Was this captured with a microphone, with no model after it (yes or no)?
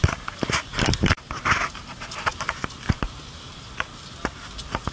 yes